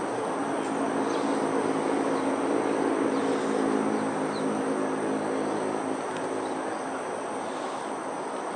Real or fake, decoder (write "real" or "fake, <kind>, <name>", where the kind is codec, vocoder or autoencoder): real